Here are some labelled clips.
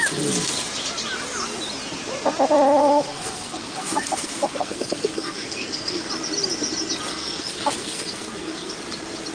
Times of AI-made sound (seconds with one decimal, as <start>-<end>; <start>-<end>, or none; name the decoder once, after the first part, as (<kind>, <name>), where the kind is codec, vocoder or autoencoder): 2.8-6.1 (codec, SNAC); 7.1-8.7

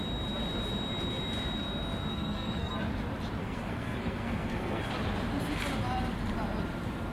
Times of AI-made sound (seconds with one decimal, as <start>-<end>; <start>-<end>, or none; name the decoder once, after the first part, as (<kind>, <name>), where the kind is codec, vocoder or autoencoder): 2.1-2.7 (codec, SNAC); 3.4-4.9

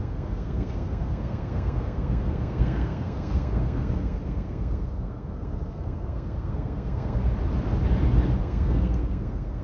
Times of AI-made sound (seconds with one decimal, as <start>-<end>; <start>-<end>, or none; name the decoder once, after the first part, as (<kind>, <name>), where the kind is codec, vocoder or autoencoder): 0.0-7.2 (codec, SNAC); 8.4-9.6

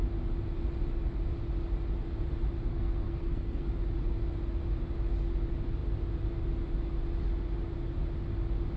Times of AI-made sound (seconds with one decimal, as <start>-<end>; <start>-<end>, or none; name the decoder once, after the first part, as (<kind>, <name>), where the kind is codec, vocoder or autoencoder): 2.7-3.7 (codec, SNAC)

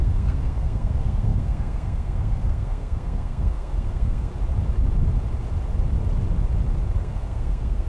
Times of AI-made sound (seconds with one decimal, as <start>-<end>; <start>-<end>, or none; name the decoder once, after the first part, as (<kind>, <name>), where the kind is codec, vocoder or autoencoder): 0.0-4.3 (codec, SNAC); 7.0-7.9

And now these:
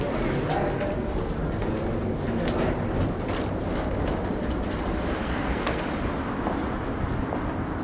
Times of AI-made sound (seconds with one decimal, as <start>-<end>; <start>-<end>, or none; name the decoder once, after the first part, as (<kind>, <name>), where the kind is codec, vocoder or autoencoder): 5.2-5.8 (codec, SNAC)